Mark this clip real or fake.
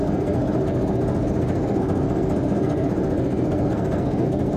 fake